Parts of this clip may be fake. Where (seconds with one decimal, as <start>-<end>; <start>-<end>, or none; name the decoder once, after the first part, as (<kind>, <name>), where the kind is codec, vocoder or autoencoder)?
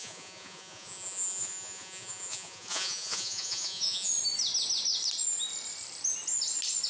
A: 0.0-4.1 (vocoder, Vocos)